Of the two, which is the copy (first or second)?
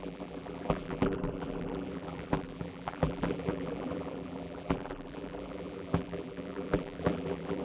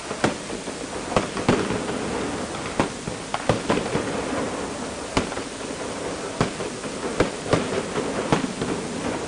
first